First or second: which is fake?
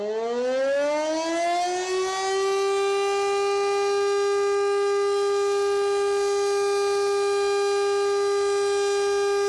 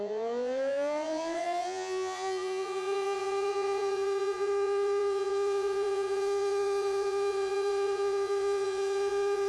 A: second